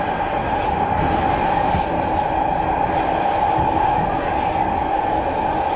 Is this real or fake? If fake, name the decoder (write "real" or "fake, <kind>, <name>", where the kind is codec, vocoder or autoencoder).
real